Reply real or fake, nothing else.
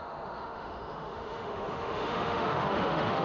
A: fake